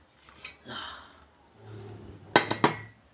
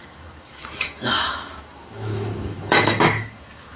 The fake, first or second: second